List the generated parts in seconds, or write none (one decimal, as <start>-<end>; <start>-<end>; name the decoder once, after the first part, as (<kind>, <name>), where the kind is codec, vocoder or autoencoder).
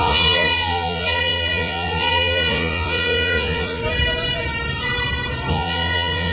0.0-3.8 (vocoder, Vocos); 5.5-6.3